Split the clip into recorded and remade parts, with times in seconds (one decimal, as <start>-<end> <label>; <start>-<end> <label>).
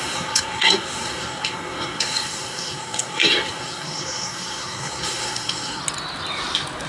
0.0-5.8 remade; 5.8-6.9 recorded